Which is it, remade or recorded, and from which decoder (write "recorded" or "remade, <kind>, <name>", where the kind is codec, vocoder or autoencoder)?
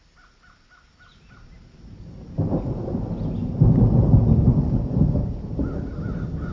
recorded